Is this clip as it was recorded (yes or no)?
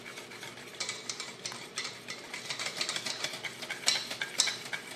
yes